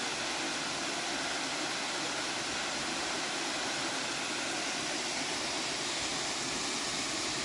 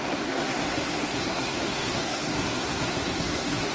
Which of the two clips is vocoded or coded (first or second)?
second